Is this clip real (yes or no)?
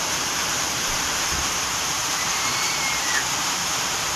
no